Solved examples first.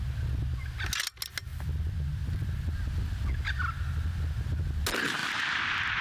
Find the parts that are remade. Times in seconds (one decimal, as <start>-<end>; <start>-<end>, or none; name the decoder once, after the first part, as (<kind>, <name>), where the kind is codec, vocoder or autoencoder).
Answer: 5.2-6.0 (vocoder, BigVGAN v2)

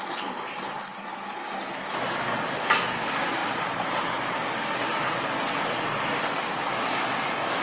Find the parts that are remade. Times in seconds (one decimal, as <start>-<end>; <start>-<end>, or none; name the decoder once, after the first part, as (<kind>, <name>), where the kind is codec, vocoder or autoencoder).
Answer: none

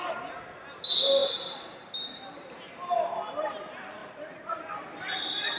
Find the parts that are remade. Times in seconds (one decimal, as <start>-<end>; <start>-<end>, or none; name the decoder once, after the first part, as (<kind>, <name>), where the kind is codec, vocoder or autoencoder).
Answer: 1.2-3.6 (vocoder, BigVGAN v2); 4.0-5.6